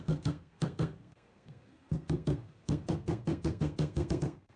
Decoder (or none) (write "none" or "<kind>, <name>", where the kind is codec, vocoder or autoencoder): codec, SNAC